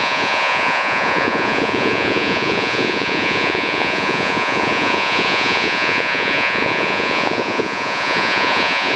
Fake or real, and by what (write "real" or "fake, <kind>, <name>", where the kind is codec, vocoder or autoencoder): fake, vocoder, Vocos